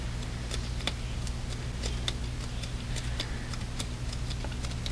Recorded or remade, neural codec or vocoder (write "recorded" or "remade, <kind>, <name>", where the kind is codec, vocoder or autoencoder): recorded